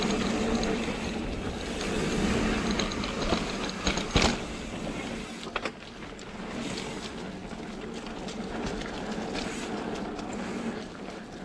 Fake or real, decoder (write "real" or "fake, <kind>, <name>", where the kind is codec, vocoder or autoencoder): real